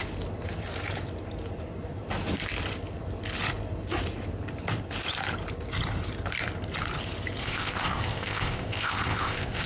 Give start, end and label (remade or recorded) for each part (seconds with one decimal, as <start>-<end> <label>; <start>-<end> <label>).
0.0-7.4 recorded; 7.4-9.7 remade